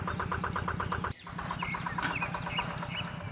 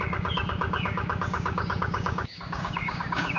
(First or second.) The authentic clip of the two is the first